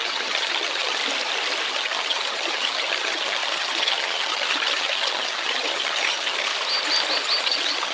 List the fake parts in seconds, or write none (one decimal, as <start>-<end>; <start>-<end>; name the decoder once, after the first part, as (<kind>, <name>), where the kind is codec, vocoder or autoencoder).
0.0-1.0 (vocoder, HiFi-GAN); 1.7-6.5; 7.4-7.9